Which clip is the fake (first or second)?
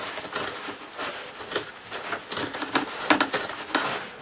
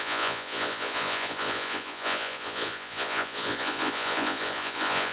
second